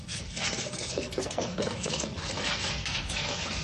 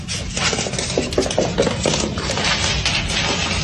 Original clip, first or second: second